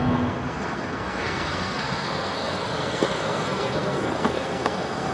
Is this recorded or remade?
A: remade